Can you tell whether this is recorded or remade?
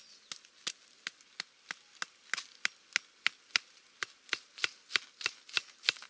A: recorded